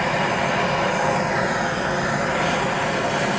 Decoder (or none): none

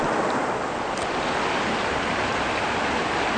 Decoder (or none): none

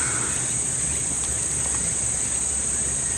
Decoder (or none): none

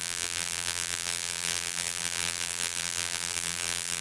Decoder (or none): vocoder, BigVGAN v2